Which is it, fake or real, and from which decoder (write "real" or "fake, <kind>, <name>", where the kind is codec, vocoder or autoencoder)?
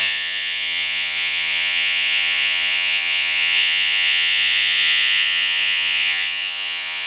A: fake, vocoder, Vocos